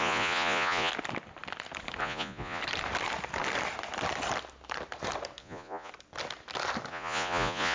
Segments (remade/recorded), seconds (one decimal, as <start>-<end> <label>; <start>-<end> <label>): 0.0-0.9 remade; 0.9-2.0 recorded; 2.0-2.6 remade; 2.6-5.4 recorded; 5.4-5.9 remade; 5.9-6.9 recorded; 6.9-7.7 remade